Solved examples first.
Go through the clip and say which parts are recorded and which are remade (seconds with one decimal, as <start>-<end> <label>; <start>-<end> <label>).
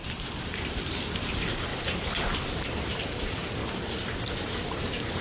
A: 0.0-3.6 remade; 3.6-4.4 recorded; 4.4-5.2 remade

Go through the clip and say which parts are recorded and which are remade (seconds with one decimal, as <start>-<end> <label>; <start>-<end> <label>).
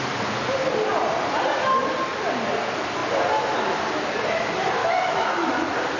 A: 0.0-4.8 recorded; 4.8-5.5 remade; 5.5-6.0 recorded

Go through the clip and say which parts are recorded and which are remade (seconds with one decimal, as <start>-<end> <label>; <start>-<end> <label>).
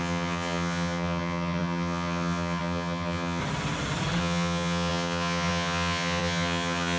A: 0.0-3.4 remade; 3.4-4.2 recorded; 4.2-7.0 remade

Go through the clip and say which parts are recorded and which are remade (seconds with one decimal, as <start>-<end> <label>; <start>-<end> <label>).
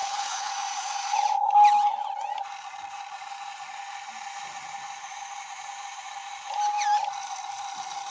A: 0.0-0.5 remade; 0.5-8.1 recorded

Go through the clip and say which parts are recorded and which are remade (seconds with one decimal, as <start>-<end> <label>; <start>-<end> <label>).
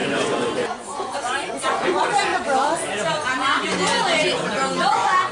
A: 0.0-2.3 remade; 2.3-4.8 recorded; 4.8-5.3 remade